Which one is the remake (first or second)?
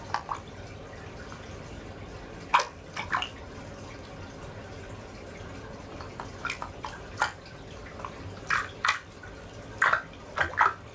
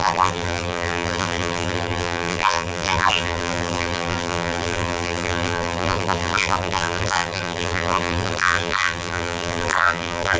second